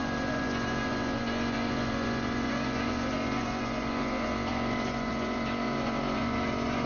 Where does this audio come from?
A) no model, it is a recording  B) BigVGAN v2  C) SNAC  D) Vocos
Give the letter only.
D